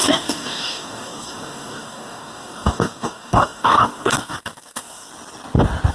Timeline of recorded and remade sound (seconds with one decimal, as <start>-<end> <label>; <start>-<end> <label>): 0.0-5.1 remade; 5.1-5.9 recorded